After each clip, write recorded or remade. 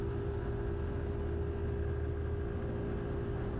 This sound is recorded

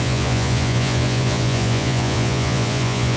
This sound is remade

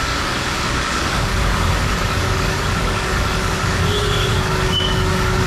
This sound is remade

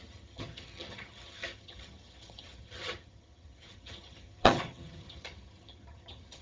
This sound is remade